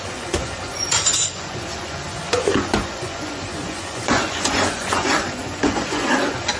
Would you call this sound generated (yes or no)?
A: yes